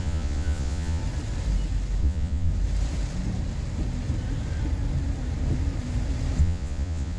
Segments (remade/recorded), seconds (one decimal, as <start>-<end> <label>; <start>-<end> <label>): 0.0-1.0 remade; 1.0-2.0 recorded; 2.0-2.5 remade; 2.5-6.4 recorded; 6.4-7.2 remade